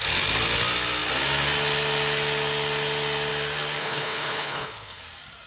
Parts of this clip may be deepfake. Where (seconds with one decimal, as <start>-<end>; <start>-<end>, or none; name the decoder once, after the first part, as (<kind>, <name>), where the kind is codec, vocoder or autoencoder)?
3.8-5.0 (codec, HILCodec)